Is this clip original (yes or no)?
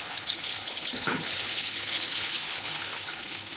no